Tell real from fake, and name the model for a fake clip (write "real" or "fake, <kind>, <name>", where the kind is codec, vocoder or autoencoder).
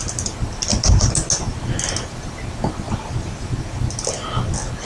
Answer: real